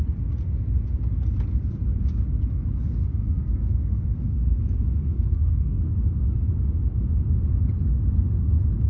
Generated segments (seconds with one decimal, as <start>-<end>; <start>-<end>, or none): 3.2-4.6; 5.0-5.8